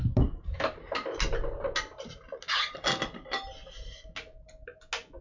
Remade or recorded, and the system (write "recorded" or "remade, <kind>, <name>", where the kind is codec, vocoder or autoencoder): recorded